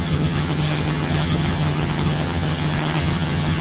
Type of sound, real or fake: fake